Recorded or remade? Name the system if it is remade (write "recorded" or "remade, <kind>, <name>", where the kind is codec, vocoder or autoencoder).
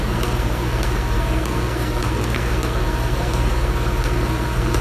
remade, codec, SNAC